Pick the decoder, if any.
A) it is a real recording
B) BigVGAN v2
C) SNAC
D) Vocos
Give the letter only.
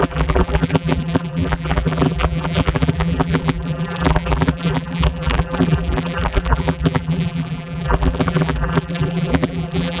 B